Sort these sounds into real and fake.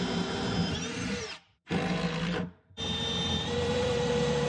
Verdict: fake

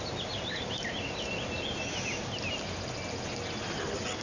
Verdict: real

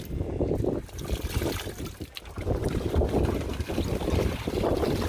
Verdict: real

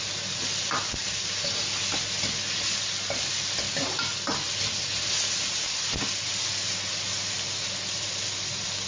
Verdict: real